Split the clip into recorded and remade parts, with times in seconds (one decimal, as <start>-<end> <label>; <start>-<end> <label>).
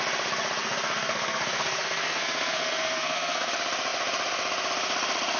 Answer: 0.0-0.6 recorded; 0.6-3.5 remade; 3.5-5.4 recorded